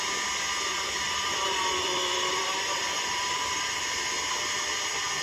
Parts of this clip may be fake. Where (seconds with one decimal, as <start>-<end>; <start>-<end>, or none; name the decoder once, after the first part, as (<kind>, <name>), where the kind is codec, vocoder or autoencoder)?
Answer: 0.7-3.8 (vocoder, BigVGAN v2)